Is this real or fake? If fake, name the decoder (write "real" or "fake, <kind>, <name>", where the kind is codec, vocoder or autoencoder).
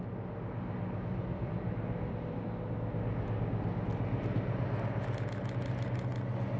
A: real